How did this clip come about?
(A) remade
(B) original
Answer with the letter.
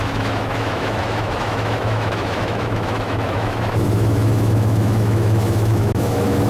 A